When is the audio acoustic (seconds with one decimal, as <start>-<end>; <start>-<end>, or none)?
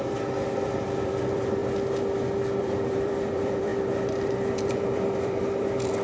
1.6-2.6